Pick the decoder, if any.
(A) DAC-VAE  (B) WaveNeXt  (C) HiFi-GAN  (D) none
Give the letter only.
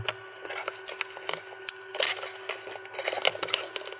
D